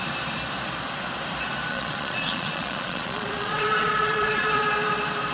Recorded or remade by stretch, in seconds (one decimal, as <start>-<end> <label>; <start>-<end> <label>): 0.0-1.7 recorded; 1.7-4.6 remade; 4.6-5.3 recorded